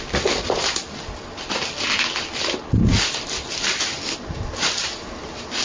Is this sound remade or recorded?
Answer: recorded